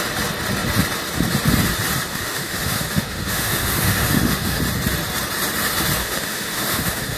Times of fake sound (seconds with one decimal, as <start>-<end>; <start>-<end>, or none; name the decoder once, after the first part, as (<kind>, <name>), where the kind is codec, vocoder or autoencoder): 2.1-4.6 (autoencoder, DAC-VAE); 6.0-7.2